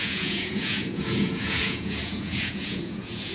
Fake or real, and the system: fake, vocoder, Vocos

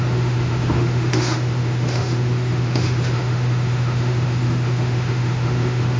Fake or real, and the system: fake, autoencoder, DAC-VAE